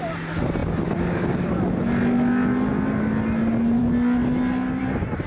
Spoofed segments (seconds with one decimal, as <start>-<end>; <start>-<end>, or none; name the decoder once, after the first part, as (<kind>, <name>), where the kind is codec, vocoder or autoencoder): none